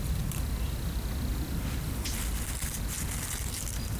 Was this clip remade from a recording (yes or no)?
no